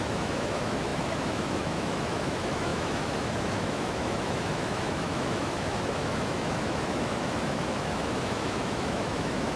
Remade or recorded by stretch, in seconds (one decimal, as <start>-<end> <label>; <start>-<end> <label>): 0.0-9.6 remade

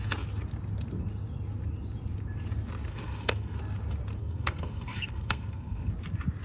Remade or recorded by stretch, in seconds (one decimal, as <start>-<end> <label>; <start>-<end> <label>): 0.0-2.9 recorded; 2.9-3.6 remade; 3.6-4.2 recorded; 4.2-5.9 remade; 5.9-6.4 recorded

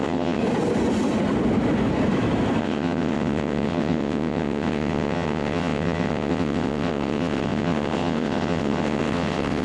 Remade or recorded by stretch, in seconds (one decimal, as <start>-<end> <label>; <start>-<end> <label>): 0.0-0.4 remade; 0.4-2.6 recorded; 2.6-9.6 remade

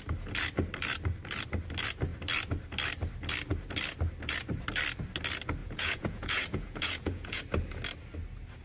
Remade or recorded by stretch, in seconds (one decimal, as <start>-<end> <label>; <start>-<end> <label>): 0.0-5.6 recorded; 5.6-7.4 remade; 7.4-8.6 recorded

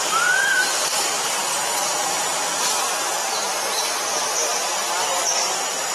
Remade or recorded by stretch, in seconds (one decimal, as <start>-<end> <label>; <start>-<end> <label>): 0.0-1.4 remade; 1.4-1.9 recorded; 1.9-4.8 remade; 4.8-5.9 recorded

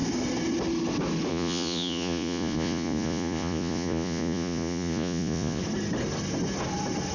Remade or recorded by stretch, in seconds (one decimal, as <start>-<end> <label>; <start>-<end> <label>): 0.0-1.3 recorded; 1.3-5.6 remade; 5.6-7.1 recorded

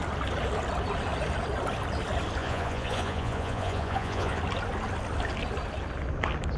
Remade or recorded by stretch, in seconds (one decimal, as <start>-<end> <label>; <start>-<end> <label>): 0.0-2.4 recorded; 2.4-4.4 remade; 4.4-6.6 recorded

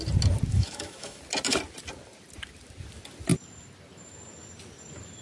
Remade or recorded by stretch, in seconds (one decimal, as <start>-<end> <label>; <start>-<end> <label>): 0.0-0.5 recorded; 0.5-1.2 remade; 1.2-5.2 recorded